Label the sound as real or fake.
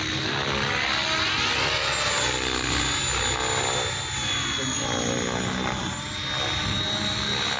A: real